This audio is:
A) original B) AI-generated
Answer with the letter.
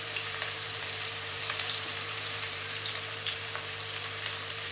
B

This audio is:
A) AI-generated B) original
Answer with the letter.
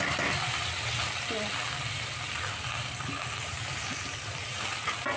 A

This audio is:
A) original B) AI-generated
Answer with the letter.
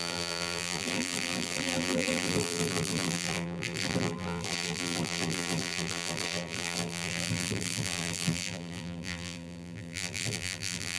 B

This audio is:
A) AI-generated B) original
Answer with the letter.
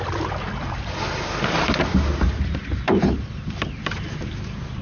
A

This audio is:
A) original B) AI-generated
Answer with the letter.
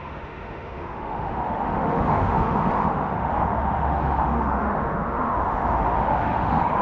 B